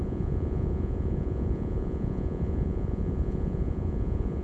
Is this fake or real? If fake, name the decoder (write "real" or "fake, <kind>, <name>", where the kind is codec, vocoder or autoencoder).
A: fake, vocoder, Vocos